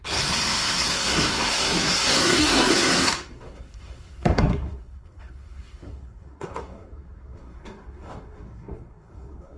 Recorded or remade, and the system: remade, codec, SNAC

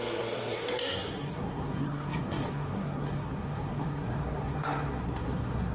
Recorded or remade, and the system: remade, codec, SNAC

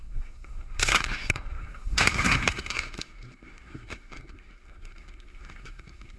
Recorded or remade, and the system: remade, codec, SNAC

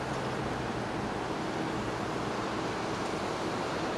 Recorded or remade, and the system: recorded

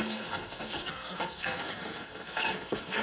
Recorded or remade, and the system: remade, codec, SNAC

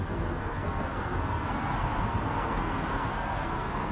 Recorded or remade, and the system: remade, codec, SNAC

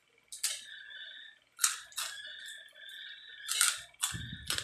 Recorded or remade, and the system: recorded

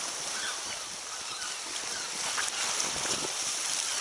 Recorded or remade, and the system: recorded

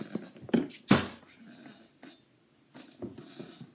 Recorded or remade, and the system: recorded